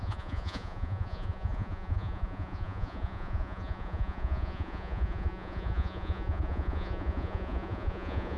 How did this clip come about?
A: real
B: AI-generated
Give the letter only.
B